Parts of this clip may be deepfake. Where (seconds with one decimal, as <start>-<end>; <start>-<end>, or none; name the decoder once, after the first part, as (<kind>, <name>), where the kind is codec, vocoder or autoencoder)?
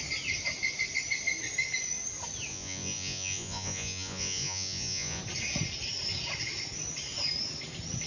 2.5-5.2 (vocoder, Vocos)